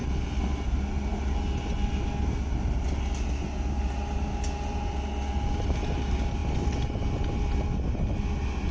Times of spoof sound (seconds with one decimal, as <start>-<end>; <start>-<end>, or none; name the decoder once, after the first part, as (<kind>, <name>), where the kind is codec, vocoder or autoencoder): none